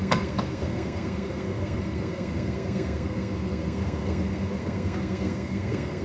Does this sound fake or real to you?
fake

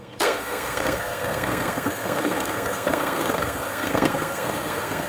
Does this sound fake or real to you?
fake